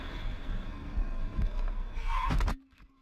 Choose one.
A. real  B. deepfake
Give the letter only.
B